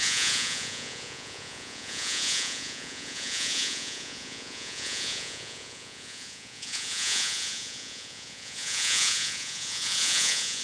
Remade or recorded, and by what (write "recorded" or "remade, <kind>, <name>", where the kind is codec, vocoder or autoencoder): remade, vocoder, Vocos